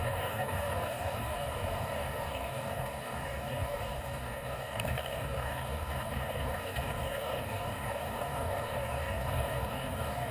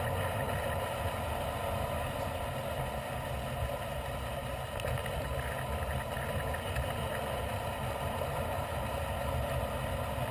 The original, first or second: second